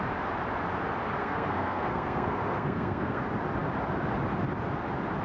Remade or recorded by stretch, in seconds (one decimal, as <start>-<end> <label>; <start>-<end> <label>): 0.0-1.2 recorded; 1.2-3.2 remade; 3.2-5.2 recorded